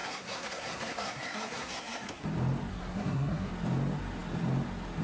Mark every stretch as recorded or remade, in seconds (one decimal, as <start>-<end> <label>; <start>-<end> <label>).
0.0-2.2 remade; 2.2-2.7 recorded; 2.7-3.5 remade; 3.5-5.0 recorded